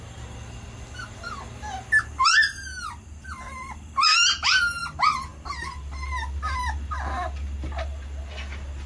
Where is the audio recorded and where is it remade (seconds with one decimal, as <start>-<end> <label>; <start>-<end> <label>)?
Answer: 0.0-8.9 recorded

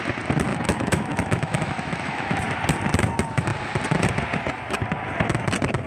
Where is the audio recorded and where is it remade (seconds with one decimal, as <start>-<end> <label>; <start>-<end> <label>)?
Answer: 0.0-0.5 recorded; 0.5-2.4 remade; 2.4-5.9 recorded

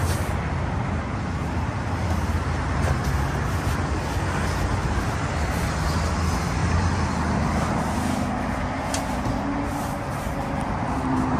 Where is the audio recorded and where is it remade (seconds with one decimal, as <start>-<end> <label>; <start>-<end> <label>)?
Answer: 0.0-1.0 remade; 1.0-6.6 recorded; 6.6-7.7 remade; 7.7-11.4 recorded

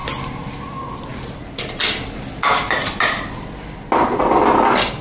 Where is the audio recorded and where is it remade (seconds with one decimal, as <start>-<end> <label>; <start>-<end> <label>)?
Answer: 0.0-5.0 recorded

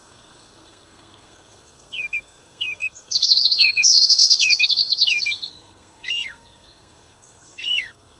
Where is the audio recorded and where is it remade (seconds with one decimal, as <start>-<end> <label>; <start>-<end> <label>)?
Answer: 0.0-8.2 remade